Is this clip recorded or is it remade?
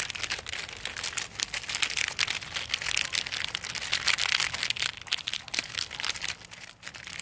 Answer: recorded